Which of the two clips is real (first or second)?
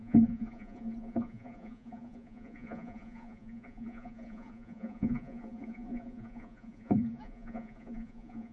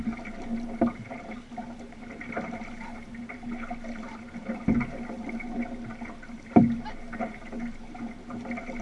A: second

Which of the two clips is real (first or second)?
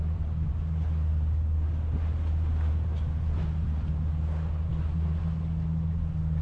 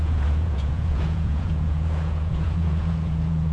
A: first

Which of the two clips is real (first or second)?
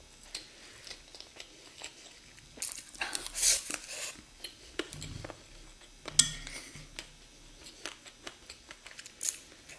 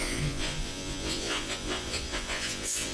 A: first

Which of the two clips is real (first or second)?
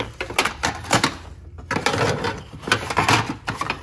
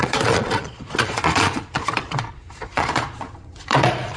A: first